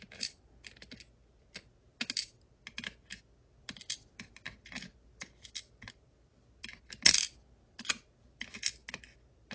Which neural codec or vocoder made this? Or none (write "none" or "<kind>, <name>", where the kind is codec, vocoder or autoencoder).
none